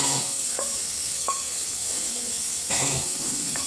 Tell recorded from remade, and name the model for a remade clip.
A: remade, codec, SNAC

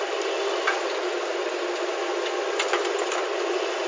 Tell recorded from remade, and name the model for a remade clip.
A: recorded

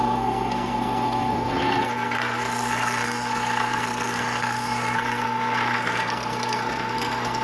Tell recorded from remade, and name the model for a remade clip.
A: remade, codec, SNAC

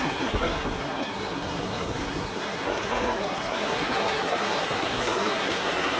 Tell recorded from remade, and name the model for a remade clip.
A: remade, codec, SNAC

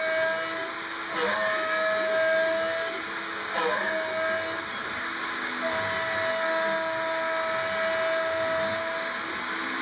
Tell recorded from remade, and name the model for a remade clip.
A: recorded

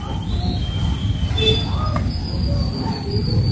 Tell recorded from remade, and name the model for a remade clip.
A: recorded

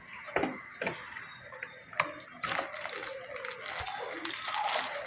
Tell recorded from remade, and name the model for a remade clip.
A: recorded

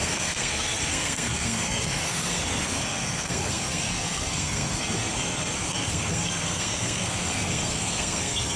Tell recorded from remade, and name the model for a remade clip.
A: remade, codec, SNAC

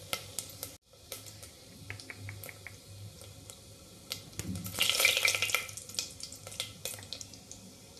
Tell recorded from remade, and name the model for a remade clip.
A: recorded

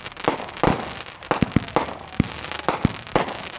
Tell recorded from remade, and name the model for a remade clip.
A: recorded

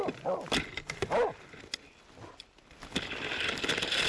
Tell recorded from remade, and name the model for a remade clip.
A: recorded